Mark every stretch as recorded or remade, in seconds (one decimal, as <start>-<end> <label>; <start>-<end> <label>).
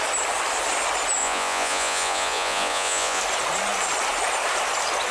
0.0-1.2 recorded; 1.2-3.2 remade; 3.2-5.1 recorded